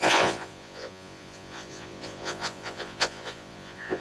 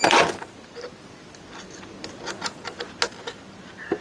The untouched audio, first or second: second